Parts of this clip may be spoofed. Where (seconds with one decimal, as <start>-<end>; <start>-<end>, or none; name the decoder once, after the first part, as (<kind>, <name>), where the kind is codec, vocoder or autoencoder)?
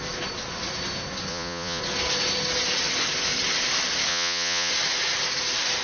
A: 1.3-1.8 (vocoder, Vocos); 4.1-4.7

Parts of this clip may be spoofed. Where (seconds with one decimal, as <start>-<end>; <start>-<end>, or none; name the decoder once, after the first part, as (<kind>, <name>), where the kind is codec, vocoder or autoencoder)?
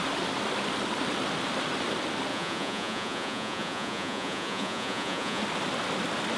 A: 2.3-5.4 (vocoder, Vocos)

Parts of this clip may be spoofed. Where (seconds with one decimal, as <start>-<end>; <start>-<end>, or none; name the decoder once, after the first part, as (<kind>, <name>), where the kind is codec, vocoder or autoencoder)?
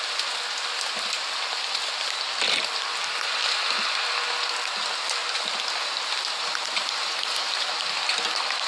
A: none